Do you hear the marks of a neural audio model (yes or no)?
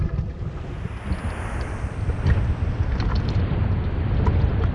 yes